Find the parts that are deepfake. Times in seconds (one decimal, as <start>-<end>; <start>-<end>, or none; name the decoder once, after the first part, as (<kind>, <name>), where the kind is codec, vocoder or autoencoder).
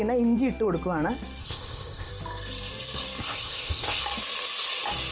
1.4-2.1 (codec, ZipCodec); 3.2-4.0